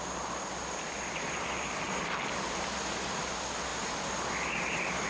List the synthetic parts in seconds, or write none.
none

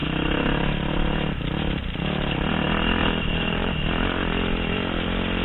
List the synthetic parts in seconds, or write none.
3.0-3.7 (vocoder, BigVGAN v2)

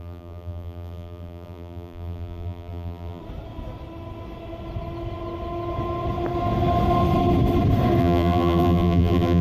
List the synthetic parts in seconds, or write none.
0.0-3.2 (vocoder, BigVGAN v2); 8.0-9.4